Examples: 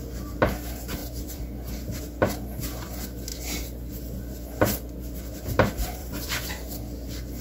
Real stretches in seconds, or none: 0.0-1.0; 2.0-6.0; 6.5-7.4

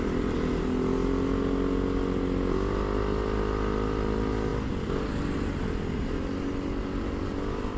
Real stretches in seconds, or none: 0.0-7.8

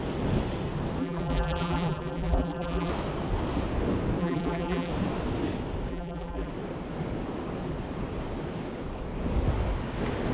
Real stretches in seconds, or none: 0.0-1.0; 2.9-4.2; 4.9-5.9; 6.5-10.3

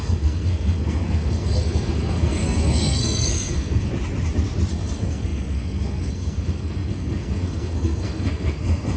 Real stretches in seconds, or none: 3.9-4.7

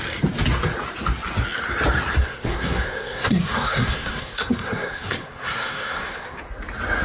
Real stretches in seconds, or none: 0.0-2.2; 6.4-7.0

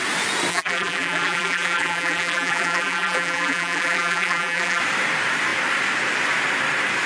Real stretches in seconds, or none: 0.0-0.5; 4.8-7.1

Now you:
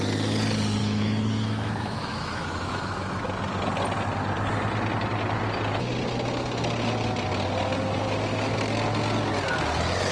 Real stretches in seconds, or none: 0.0-0.8; 3.2-10.1